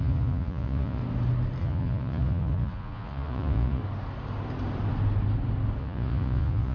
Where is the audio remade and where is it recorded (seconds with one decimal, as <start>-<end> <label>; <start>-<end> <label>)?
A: 0.0-1.0 remade; 1.0-1.6 recorded; 1.6-3.8 remade; 3.8-5.8 recorded; 5.8-6.7 remade